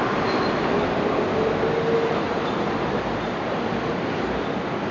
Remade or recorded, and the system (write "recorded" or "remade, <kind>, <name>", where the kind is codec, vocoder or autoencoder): recorded